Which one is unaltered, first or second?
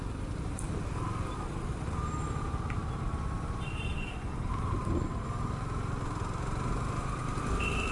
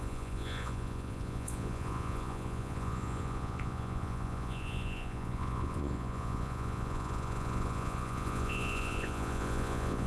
first